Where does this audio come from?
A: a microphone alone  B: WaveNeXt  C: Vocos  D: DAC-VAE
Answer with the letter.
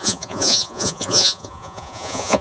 C